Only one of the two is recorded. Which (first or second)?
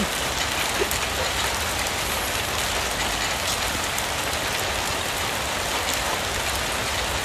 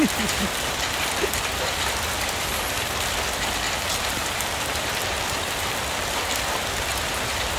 first